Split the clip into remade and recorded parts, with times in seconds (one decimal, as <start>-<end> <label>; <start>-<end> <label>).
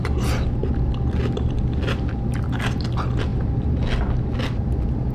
0.0-5.1 recorded